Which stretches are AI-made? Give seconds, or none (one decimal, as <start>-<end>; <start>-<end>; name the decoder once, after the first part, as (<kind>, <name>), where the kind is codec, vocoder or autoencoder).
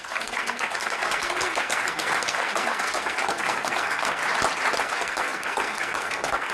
0.0-4.2 (codec, SNAC); 4.8-6.5